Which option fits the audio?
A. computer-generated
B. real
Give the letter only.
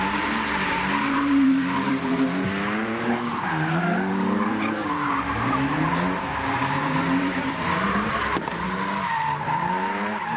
A